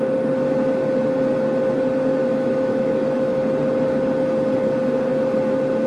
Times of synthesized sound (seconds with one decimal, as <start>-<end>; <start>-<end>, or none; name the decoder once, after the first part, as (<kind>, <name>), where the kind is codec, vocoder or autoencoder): 2.2-3.4 (autoencoder, DAC-VAE)